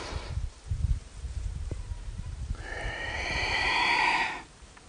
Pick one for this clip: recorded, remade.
remade